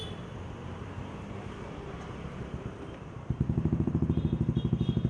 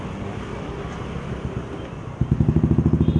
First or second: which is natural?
second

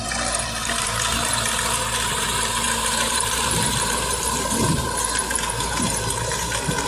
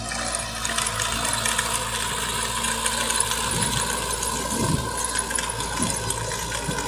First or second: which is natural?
second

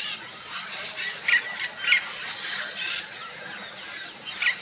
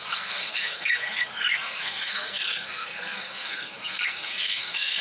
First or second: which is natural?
first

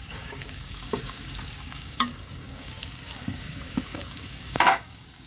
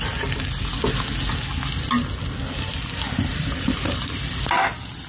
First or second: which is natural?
second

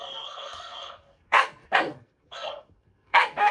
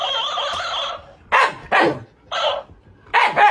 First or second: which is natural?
second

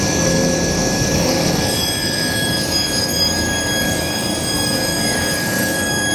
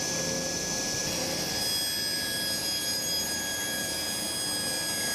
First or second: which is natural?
second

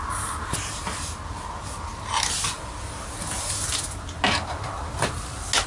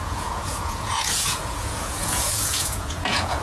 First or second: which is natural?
first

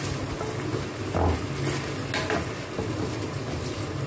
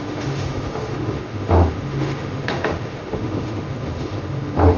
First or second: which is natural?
first